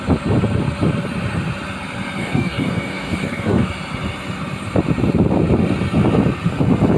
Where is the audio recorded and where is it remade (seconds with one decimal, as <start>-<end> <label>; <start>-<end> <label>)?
0.0-2.2 recorded; 2.2-3.7 remade; 3.7-7.0 recorded